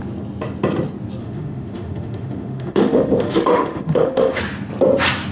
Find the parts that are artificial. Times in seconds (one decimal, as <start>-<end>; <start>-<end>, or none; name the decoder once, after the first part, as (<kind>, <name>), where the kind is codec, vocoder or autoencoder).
1.2-4.4 (autoencoder, DAC-VAE)